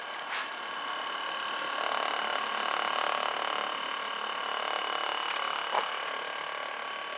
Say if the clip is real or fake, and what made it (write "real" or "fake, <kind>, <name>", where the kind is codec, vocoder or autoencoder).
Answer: real